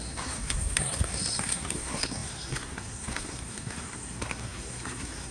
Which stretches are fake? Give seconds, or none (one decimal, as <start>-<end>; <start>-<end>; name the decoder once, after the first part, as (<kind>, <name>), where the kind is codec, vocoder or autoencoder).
0.0-5.3 (codec, SNAC)